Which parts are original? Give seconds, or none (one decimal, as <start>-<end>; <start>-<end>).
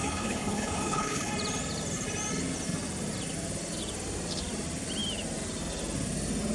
1.3-6.5